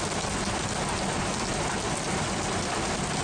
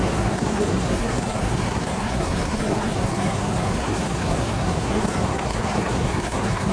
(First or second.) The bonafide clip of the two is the first